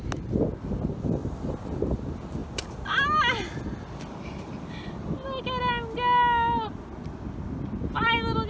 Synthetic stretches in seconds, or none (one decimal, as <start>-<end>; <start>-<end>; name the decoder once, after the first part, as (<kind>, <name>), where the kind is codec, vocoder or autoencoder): 1.2-1.8 (vocoder, BigVGAN v2)